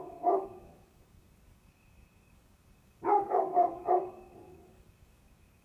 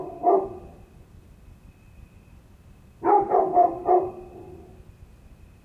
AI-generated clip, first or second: first